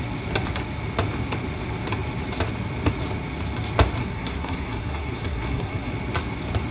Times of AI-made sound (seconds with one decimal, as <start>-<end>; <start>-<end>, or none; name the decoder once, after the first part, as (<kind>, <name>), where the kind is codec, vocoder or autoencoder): 4.0-5.9 (codec, SNAC)